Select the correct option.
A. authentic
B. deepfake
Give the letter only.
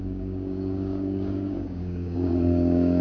B